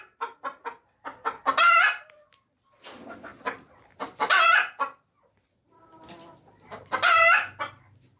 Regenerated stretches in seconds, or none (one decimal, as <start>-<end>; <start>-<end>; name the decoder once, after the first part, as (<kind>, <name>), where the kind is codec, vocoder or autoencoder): none